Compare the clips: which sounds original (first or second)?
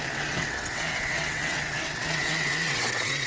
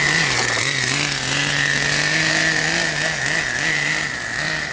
second